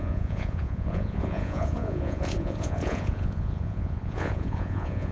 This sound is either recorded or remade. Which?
remade